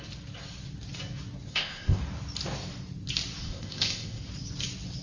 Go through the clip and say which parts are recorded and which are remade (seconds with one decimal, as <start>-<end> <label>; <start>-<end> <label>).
0.0-1.5 recorded; 1.5-2.0 remade; 2.0-3.4 recorded; 3.4-4.2 remade; 4.2-5.0 recorded